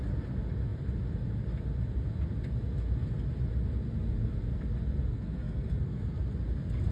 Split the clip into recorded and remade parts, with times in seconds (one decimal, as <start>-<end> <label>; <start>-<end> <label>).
0.0-5.1 recorded; 5.1-6.2 remade; 6.2-6.9 recorded